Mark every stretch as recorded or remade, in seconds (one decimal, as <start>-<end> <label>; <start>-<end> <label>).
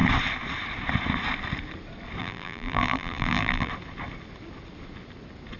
0.0-2.2 recorded; 2.2-3.7 remade; 3.7-5.6 recorded